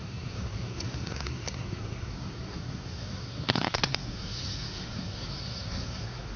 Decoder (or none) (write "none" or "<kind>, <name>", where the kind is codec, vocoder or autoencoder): codec, SNAC